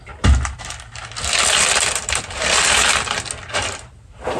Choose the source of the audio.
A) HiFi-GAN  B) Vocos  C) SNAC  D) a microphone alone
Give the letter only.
D